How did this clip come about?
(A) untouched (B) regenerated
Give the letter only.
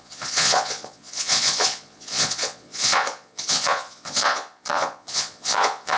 B